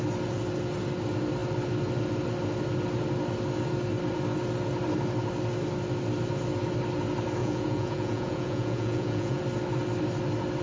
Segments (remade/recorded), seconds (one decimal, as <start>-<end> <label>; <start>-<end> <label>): 0.0-7.4 recorded; 7.4-9.4 remade; 9.4-10.6 recorded

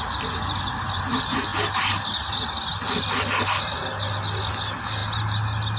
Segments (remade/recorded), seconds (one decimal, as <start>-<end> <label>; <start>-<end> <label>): 0.0-5.8 recorded

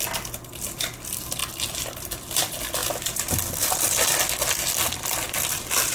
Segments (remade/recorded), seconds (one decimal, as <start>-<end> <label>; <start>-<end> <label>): 0.0-5.9 recorded

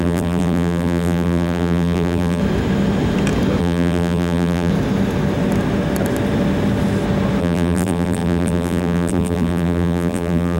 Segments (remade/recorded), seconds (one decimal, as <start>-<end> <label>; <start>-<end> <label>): 0.0-2.4 remade; 2.4-3.6 recorded; 3.6-4.7 remade; 4.7-7.4 recorded; 7.4-10.6 remade